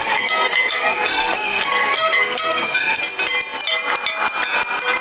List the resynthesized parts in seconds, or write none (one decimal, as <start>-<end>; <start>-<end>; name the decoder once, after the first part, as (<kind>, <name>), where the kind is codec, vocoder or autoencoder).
0.0-3.0 (codec, SNAC)